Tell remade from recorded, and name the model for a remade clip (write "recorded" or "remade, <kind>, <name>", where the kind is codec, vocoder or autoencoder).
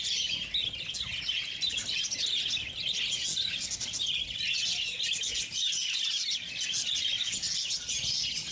recorded